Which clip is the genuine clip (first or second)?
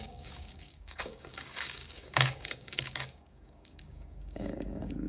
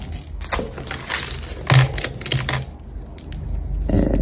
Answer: second